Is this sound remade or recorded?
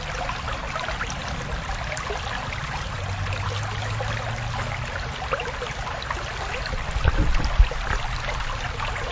recorded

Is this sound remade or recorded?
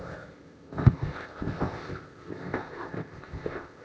remade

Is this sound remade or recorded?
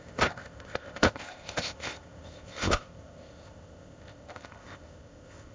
remade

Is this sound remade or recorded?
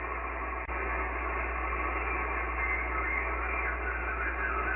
recorded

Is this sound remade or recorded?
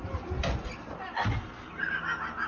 recorded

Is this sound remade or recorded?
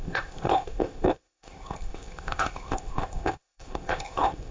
remade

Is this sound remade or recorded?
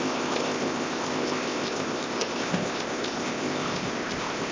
remade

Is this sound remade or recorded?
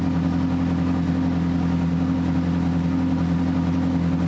recorded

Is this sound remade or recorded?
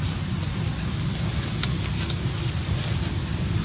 recorded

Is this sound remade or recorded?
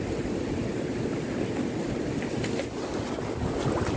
recorded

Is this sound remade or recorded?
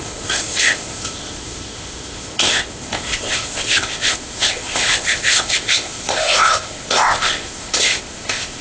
remade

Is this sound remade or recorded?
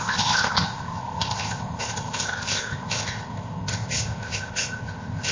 remade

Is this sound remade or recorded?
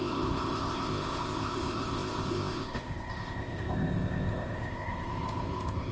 remade